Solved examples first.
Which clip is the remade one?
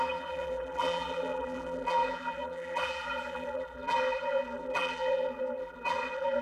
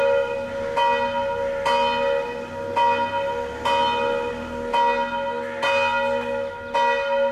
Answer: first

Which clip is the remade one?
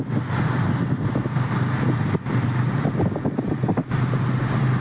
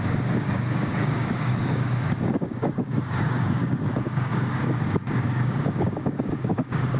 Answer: second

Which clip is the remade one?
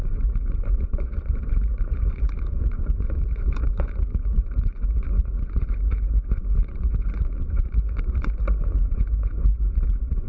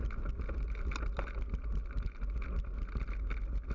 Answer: first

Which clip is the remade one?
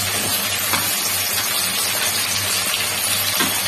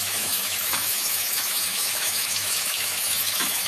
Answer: second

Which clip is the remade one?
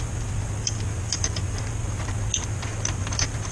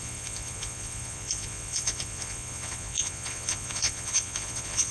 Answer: second